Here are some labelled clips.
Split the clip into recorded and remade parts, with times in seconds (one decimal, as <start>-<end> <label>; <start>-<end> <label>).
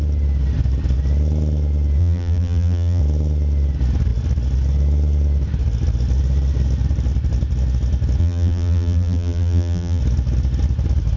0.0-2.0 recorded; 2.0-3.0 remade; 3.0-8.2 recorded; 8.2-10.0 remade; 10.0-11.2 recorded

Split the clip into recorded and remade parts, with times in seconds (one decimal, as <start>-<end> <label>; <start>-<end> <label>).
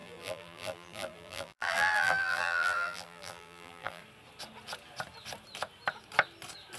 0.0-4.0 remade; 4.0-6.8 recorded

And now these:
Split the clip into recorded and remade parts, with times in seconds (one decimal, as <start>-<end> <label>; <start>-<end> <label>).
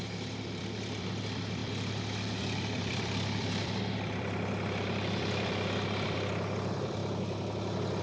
0.0-7.0 remade; 7.0-8.0 recorded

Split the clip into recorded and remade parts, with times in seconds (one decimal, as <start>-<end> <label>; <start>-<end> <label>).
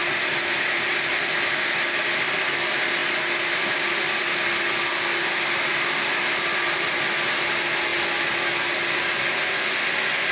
0.0-1.1 remade; 1.1-10.3 recorded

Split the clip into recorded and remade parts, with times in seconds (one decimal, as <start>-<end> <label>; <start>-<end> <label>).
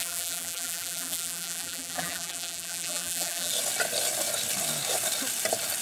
0.0-3.5 remade; 3.5-5.8 recorded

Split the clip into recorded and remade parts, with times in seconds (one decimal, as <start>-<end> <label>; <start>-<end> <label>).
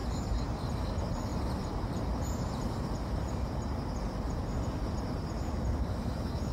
0.0-0.7 remade; 0.7-1.3 recorded; 1.3-5.2 remade; 5.2-6.5 recorded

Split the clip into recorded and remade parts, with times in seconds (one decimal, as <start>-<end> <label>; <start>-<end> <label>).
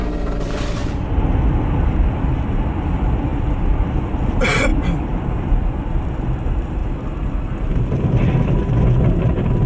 0.0-0.8 remade; 0.8-2.1 recorded; 2.1-4.7 remade; 4.7-5.4 recorded; 5.4-9.7 remade